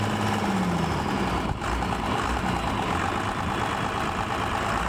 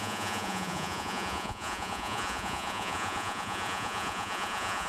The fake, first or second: second